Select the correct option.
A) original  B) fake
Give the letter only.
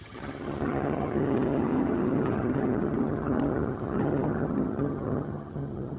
B